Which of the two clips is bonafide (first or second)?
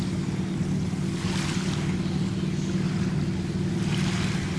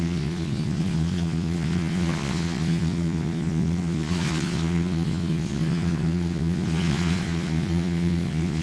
first